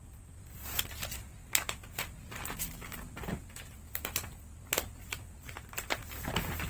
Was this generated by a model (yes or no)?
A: no